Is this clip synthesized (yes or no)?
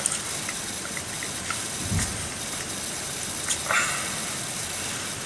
no